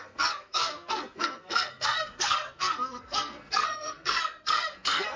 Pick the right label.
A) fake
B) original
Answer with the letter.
A